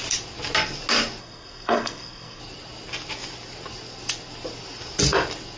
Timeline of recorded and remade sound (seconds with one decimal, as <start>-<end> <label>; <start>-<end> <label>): 0.0-1.2 recorded; 1.2-2.4 remade; 2.4-5.6 recorded